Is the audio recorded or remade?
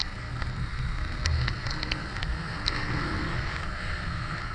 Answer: remade